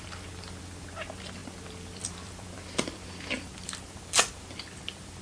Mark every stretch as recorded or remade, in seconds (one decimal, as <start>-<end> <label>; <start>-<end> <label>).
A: 0.0-5.2 remade